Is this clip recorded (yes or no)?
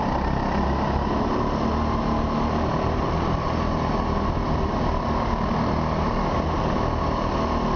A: yes